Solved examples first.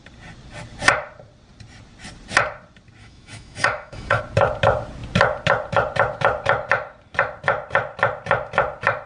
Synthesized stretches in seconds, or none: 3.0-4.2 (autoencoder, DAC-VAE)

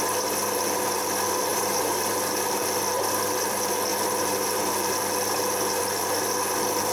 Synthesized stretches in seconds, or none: 1.5-2.6 (vocoder, BigVGAN v2)

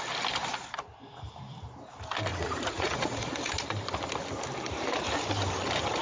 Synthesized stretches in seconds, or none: 2.3-3.3 (vocoder, Vocos)

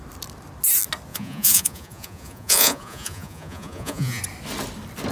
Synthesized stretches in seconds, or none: 1.1-4.2 (vocoder, Vocos)

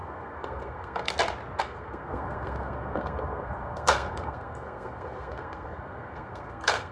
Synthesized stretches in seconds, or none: 0.0-1.1 (codec, SNAC); 1.6-6.9